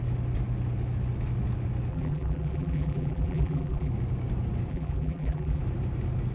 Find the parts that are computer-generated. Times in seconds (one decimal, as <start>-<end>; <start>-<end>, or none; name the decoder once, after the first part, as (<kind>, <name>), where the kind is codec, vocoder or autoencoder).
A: 1.9-3.9 (vocoder, BigVGAN v2); 4.7-5.6